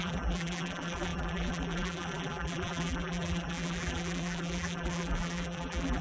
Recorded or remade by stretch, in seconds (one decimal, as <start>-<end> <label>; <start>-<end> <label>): 0.0-6.0 remade